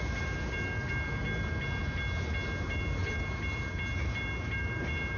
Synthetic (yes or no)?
no